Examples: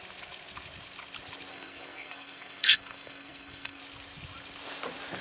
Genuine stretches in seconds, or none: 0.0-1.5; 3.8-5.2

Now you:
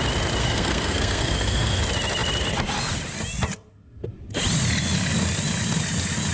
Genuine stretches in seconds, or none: 0.0-0.4; 1.8-6.3

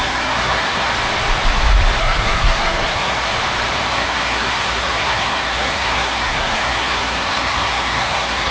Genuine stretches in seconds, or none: 0.9-2.0; 3.3-3.9

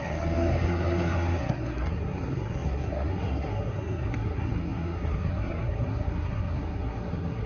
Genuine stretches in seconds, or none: none

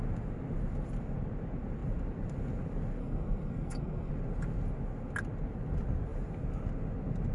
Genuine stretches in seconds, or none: 0.0-3.0; 4.1-7.3

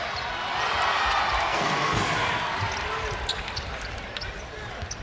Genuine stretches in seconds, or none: 0.0-1.5; 2.0-5.0

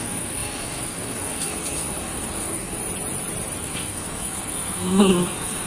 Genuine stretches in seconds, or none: 2.8-3.6

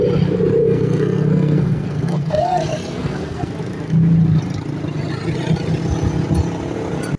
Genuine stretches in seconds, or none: 0.0-0.6; 3.5-7.2